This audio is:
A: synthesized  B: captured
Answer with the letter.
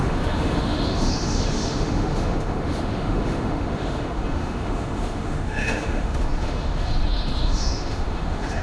A